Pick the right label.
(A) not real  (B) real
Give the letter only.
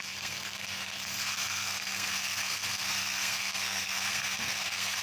A